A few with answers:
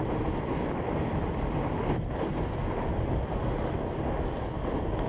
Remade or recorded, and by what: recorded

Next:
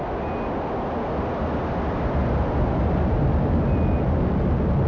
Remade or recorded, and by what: recorded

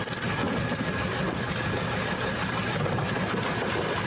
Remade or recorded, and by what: recorded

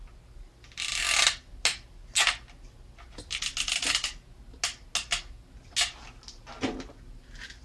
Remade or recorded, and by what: recorded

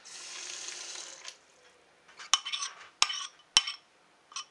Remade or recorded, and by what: recorded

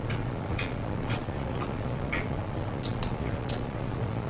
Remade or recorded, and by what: remade, vocoder, Vocos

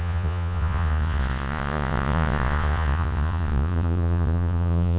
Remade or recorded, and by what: remade, vocoder, Vocos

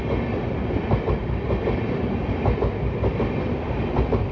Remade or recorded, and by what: recorded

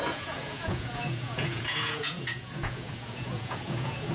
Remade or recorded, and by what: remade, vocoder, Vocos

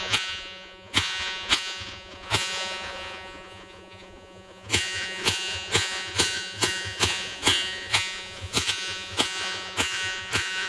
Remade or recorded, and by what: remade, vocoder, Vocos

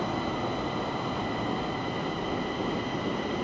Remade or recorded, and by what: recorded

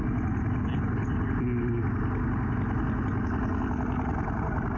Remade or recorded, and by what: recorded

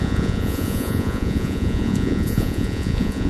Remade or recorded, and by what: remade, vocoder, Vocos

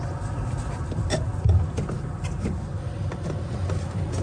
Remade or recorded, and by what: recorded